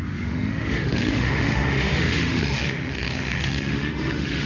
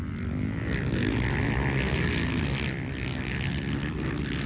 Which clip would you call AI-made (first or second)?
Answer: first